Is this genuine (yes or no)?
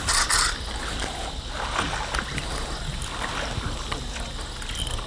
yes